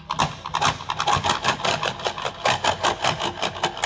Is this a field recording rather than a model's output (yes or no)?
yes